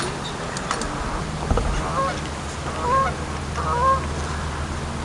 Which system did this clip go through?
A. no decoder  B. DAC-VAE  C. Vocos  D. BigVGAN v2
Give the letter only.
A